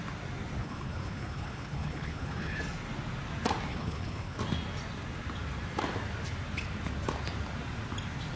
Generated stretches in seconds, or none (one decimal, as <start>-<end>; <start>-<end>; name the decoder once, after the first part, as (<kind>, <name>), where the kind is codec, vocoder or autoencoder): 0.6-2.6 (codec, HILCodec); 3.7-4.4